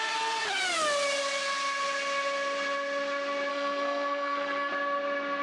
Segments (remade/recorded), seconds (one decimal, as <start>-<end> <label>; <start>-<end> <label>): 0.0-3.5 recorded; 3.5-4.7 remade; 4.7-5.4 recorded